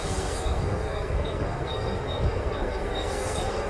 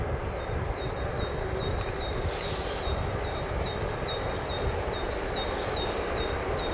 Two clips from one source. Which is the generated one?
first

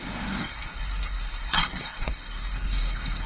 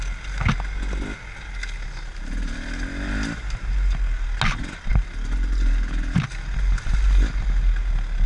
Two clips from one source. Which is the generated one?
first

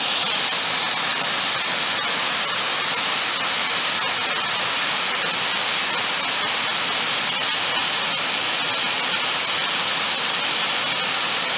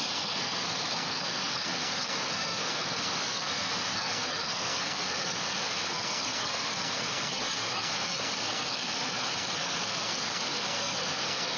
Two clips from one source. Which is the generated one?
second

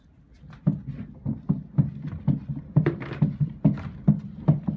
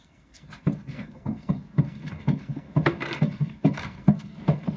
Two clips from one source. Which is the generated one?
second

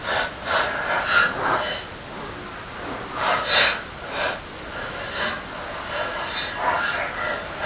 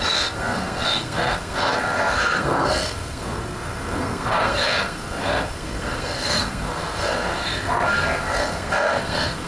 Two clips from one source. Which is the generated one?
second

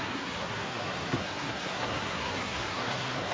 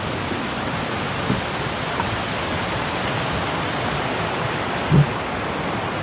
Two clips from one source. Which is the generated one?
first